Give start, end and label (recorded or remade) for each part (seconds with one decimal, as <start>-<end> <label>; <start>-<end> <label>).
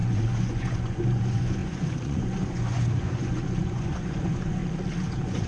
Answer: 0.0-4.6 remade; 4.6-5.1 recorded; 5.1-5.5 remade